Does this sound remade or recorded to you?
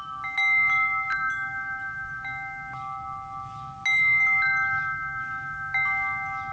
recorded